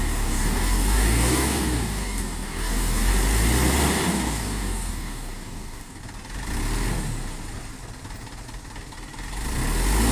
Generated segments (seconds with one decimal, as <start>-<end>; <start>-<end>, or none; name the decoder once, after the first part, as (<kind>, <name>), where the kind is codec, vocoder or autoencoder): 0.0-3.1 (codec, DAC); 4.1-6.0